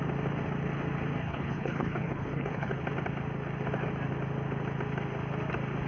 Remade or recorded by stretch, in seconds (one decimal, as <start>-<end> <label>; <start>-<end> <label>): 0.0-1.2 recorded; 1.2-2.8 remade; 2.8-5.9 recorded